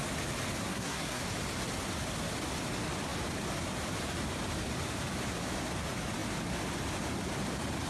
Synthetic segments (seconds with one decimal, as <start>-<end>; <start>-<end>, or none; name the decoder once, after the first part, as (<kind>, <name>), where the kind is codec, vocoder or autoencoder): 0.6-1.2 (codec, SNAC)